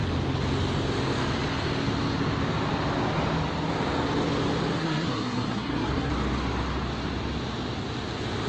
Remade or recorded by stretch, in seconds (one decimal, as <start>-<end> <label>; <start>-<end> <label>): 0.0-4.8 recorded; 4.8-6.1 remade; 6.1-8.5 recorded